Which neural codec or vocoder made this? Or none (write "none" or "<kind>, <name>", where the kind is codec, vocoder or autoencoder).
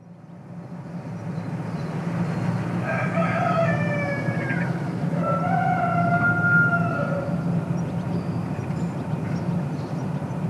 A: none